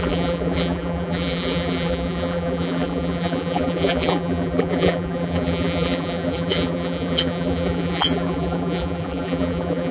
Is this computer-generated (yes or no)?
yes